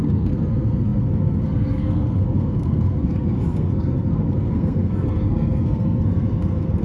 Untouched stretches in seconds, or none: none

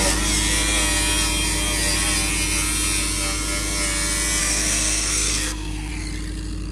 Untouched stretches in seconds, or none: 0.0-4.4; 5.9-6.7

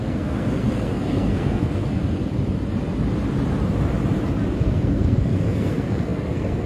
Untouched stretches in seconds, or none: 2.0-4.6

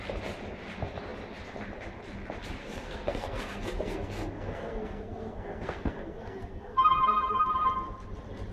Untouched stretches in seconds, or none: 0.0-2.6; 7.5-8.5

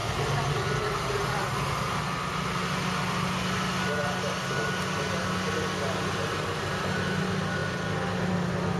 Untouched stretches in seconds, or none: 0.0-8.8